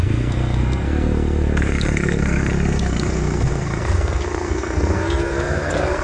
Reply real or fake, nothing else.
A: fake